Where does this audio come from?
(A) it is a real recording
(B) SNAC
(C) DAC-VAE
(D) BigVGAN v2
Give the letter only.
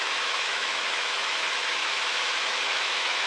C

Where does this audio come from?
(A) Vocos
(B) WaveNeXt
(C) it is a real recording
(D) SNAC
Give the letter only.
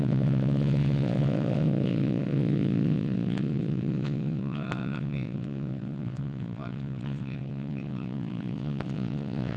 B